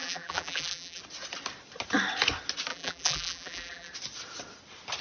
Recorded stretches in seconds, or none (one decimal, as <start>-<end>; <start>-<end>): 1.0-2.7; 3.9-5.0